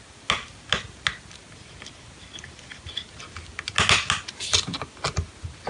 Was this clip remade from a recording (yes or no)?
no